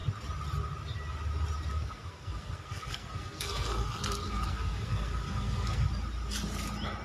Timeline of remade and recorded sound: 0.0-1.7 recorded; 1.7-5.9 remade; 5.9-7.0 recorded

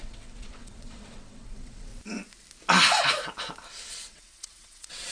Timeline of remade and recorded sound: 0.0-1.9 remade; 1.9-3.9 recorded; 3.9-5.1 remade

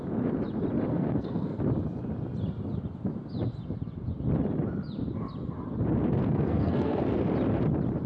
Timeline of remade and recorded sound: 0.0-0.9 recorded; 0.9-1.6 remade; 1.6-6.2 recorded; 6.2-7.0 remade; 7.0-8.1 recorded

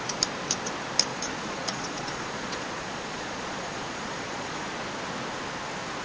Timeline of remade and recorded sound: 0.0-1.1 recorded; 1.1-4.7 remade; 4.7-6.0 recorded

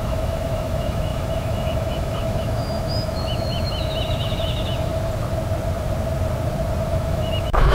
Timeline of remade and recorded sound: 0.0-4.9 remade; 4.9-6.9 recorded; 6.9-7.7 remade

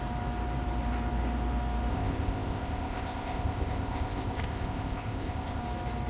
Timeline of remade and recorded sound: 0.0-1.9 recorded; 1.9-5.6 remade; 5.6-6.1 recorded